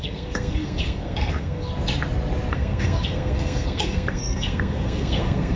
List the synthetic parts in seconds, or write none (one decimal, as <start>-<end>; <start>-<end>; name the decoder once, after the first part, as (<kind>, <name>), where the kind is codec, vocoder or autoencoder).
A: 0.0-1.7 (codec, SNAC); 2.5-5.6